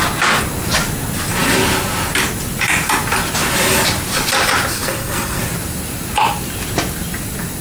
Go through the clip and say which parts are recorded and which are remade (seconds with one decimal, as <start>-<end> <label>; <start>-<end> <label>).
0.0-4.7 recorded; 4.7-5.4 remade; 5.4-7.6 recorded